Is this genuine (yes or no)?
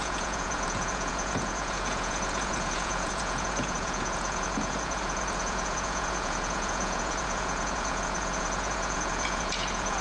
no